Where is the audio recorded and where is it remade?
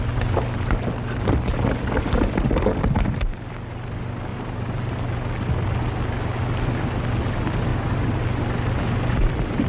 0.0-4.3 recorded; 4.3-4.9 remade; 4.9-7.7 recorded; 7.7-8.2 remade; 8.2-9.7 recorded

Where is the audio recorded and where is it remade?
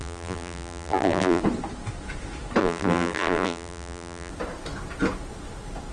0.0-1.4 remade; 1.4-2.6 recorded; 2.6-4.3 remade; 4.3-5.9 recorded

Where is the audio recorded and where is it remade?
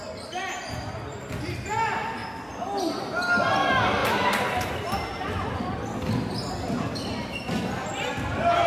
0.0-4.0 recorded; 4.0-5.6 remade; 5.6-8.7 recorded